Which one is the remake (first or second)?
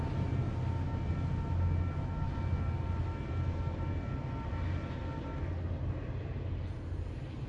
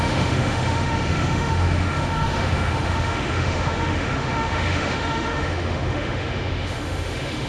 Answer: second